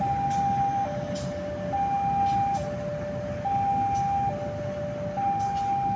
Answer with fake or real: real